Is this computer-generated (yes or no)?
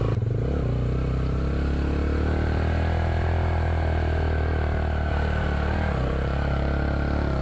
no